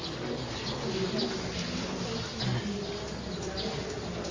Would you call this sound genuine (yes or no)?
yes